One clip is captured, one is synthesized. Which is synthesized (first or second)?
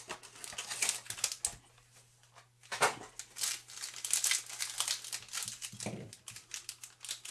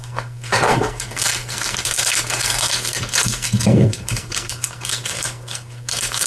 second